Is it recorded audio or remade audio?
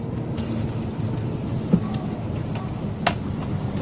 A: recorded